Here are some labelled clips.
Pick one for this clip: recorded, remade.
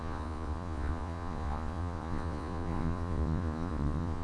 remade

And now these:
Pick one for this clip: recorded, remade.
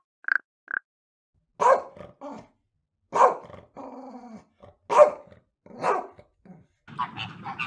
recorded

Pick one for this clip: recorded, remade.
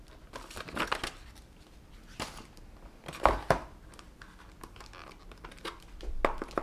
recorded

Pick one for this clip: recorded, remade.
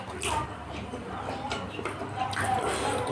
recorded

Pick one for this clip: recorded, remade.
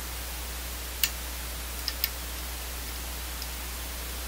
recorded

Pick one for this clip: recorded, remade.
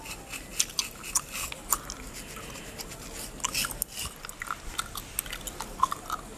recorded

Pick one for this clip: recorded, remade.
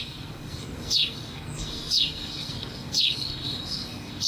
remade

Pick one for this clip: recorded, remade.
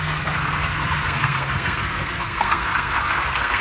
remade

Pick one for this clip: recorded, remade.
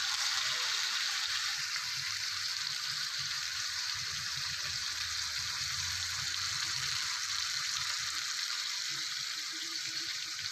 remade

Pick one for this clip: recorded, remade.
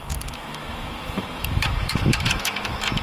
remade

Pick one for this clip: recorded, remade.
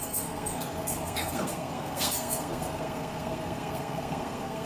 remade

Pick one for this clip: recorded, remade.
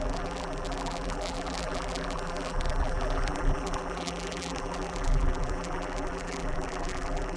remade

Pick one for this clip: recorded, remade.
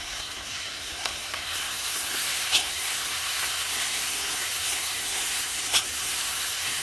remade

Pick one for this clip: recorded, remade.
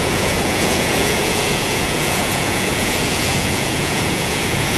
remade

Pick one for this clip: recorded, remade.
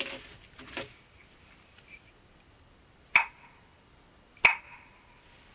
recorded